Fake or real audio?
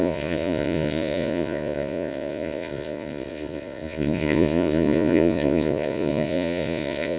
fake